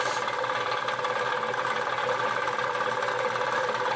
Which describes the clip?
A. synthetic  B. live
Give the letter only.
B